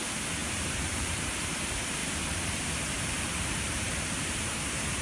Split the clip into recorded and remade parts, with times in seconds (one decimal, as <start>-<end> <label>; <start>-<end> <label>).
0.0-0.4 recorded; 0.4-1.2 remade; 1.2-2.0 recorded; 2.0-5.0 remade